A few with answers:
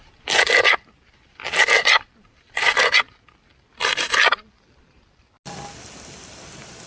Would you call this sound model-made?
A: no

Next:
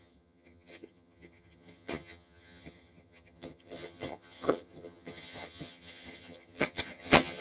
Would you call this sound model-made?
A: yes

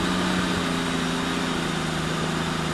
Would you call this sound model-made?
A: no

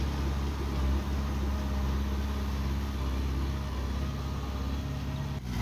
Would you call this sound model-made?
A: no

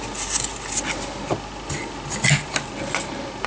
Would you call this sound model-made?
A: no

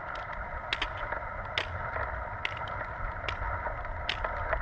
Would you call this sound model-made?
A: no